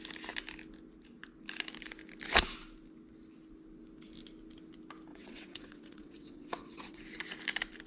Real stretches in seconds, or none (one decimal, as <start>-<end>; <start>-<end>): 0.0-5.1; 7.0-7.9